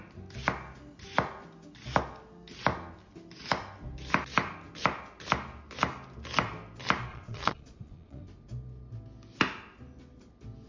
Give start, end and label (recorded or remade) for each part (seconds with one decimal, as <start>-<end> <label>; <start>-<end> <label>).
0.0-7.1 recorded; 7.1-8.2 remade; 8.2-10.7 recorded